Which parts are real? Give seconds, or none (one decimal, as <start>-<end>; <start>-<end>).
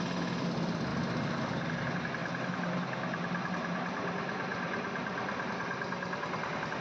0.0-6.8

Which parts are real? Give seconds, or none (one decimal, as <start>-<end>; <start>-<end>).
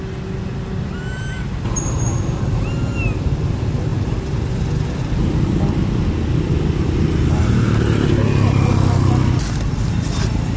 0.0-10.6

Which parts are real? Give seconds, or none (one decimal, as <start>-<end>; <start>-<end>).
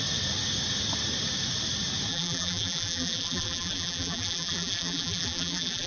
0.0-2.1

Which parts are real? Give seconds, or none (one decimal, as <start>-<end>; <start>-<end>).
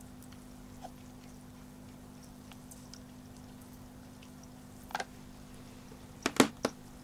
0.0-7.0